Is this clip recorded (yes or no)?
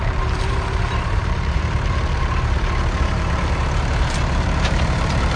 no